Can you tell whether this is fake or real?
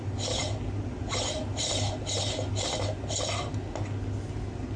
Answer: real